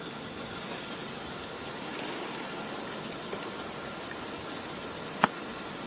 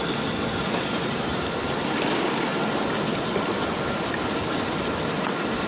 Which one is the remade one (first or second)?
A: second